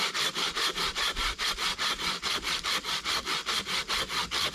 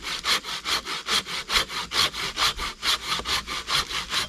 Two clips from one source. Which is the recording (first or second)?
second